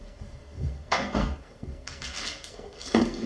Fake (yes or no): yes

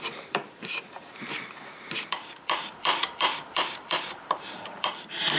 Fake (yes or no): yes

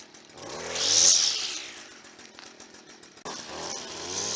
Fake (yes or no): no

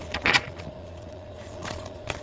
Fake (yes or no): yes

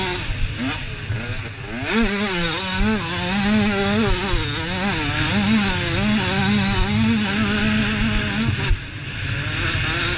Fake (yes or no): no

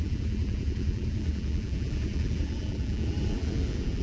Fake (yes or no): yes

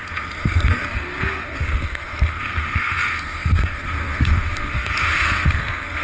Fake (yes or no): yes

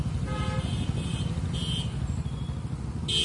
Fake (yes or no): no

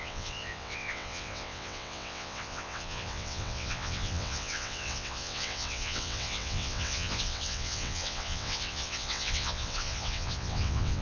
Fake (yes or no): yes